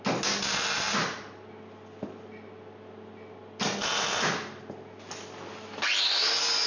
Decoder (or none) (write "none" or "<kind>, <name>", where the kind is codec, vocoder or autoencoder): none